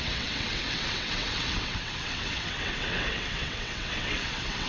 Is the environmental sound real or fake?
fake